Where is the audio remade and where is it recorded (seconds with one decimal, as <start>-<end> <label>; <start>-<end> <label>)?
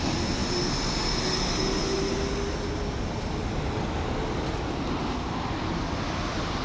0.0-6.6 recorded